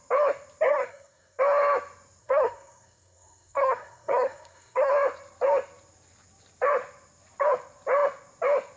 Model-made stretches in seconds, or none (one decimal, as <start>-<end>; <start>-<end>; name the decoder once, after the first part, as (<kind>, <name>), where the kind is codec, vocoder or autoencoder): 0.7-1.4 (codec, SNAC); 2.2-4.9